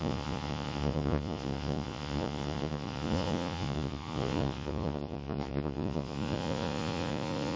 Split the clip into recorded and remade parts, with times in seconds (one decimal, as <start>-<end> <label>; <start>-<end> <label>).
0.0-7.6 remade